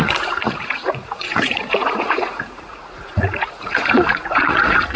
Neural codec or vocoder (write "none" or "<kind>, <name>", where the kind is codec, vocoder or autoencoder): vocoder, Vocos